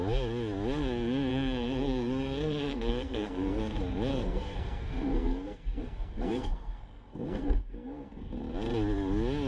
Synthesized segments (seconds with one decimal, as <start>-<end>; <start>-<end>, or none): 1.3-3.6; 4.1-8.3

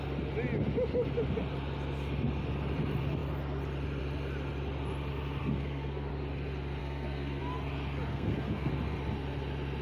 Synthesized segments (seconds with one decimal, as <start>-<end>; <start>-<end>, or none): 5.4-6.1; 6.8-7.4; 8.1-8.7

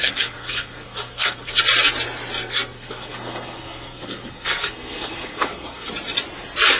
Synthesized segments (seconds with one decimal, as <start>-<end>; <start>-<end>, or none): 0.0-1.6; 2.4-5.9

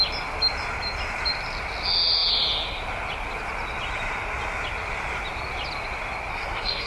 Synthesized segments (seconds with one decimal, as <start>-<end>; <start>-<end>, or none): 6.3-6.9

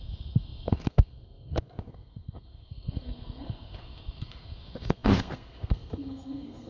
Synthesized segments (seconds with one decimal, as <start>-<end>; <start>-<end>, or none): 0.0-6.7